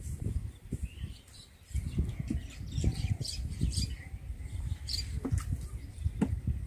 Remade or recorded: recorded